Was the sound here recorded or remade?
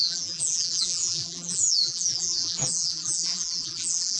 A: remade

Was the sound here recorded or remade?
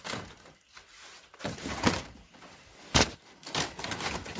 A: recorded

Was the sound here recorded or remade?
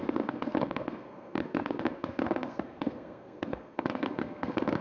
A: remade